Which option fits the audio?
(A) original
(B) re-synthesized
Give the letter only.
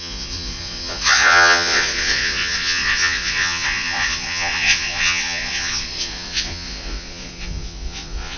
B